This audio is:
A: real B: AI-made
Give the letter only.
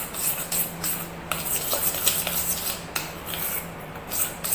A